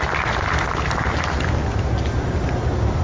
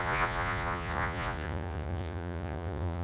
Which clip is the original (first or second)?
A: first